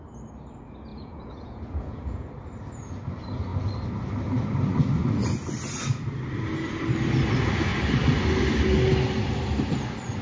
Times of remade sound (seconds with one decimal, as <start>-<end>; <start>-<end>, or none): 0.9-2.3